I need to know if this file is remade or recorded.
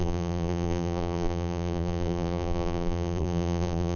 remade